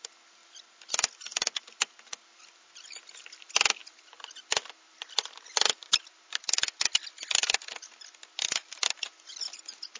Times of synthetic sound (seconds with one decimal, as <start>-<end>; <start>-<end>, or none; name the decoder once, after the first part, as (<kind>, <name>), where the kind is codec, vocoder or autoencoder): none